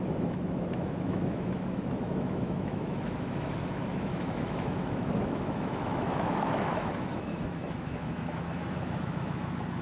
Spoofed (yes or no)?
yes